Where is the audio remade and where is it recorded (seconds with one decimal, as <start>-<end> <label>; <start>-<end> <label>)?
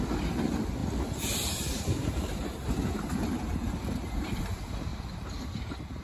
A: 0.0-0.8 recorded; 0.8-4.4 remade; 4.4-4.9 recorded; 4.9-5.6 remade; 5.6-6.0 recorded